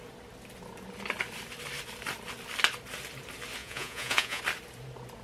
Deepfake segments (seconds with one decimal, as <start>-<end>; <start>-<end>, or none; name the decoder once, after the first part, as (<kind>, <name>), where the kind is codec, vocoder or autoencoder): 3.6-4.4 (vocoder, Vocos)